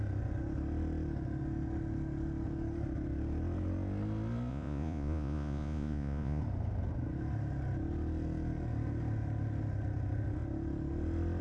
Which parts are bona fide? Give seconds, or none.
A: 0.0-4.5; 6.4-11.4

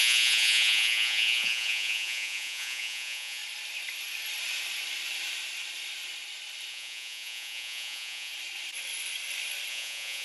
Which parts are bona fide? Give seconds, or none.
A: 3.4-6.7; 8.3-9.7

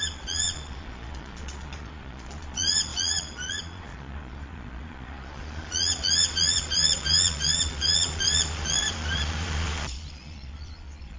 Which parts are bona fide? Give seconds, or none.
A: none

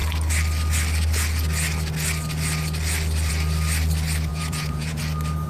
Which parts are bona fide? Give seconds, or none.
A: 0.0-4.3; 5.0-5.5

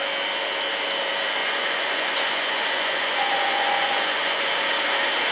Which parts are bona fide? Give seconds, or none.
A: 0.0-1.4; 4.5-5.3

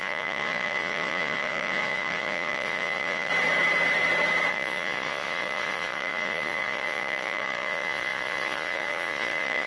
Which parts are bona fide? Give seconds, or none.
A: 3.3-4.5

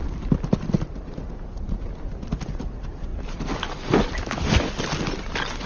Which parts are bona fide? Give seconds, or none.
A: 0.0-5.7